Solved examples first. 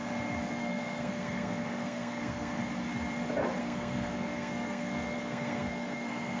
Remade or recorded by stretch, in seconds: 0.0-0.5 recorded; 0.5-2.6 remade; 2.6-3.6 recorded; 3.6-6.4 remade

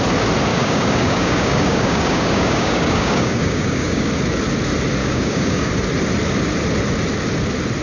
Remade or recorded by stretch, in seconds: 0.0-0.5 recorded; 0.5-4.1 remade; 4.1-5.0 recorded; 5.0-5.7 remade; 5.7-7.8 recorded

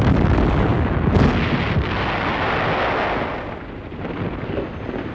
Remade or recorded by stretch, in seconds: 0.0-5.1 recorded

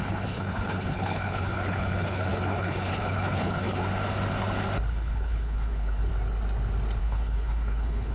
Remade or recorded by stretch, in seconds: 0.0-3.8 remade; 3.8-4.9 recorded; 4.9-6.1 remade; 6.1-7.0 recorded; 7.0-8.1 remade

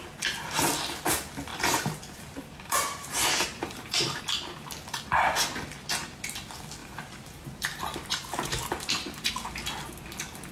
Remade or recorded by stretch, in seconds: 0.0-1.5 recorded; 1.5-4.2 remade; 4.2-6.8 recorded; 6.8-9.3 remade; 9.3-10.5 recorded